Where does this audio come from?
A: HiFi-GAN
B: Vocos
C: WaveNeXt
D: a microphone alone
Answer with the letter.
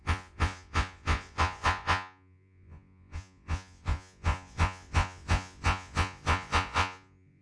B